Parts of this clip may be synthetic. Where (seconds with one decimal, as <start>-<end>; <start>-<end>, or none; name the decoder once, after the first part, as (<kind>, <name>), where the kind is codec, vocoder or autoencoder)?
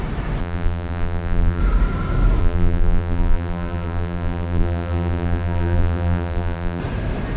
0.4-1.6 (vocoder, BigVGAN v2); 2.4-6.8